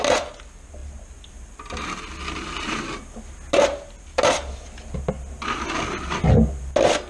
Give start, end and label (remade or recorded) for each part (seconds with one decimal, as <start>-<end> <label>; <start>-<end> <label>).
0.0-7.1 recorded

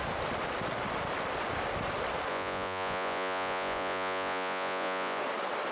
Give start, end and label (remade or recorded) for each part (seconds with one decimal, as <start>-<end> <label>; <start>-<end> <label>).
0.0-2.3 recorded; 2.3-5.2 remade; 5.2-5.7 recorded

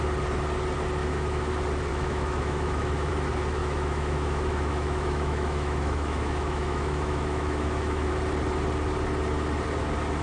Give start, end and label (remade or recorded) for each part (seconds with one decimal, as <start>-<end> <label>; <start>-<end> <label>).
0.0-1.0 recorded; 1.0-1.5 remade; 1.5-1.9 recorded; 1.9-3.1 remade; 3.1-3.6 recorded; 3.6-8.1 remade; 8.1-10.2 recorded

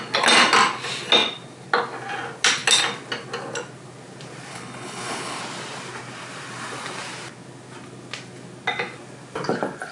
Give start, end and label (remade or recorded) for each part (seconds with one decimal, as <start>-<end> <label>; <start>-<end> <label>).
0.0-4.5 recorded; 4.5-5.4 remade; 5.4-9.9 recorded

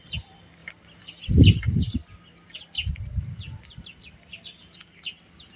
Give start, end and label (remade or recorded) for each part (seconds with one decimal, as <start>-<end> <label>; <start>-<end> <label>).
0.0-5.6 recorded